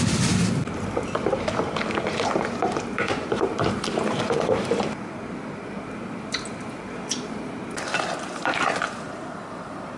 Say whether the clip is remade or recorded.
remade